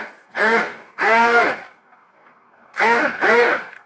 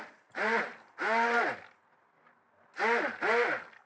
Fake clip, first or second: first